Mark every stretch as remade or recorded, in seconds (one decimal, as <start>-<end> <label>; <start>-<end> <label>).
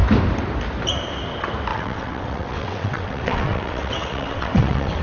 0.0-1.7 recorded; 1.7-5.0 remade